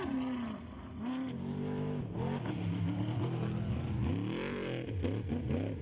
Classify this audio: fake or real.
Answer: real